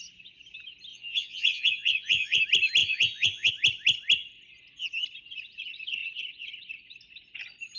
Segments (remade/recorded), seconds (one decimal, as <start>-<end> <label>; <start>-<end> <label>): 0.0-0.9 recorded; 0.9-2.4 remade; 2.4-2.8 recorded; 2.8-3.5 remade; 3.5-7.8 recorded